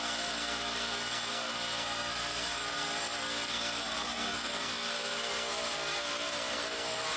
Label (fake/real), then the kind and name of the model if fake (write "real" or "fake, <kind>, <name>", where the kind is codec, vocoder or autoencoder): fake, codec, SNAC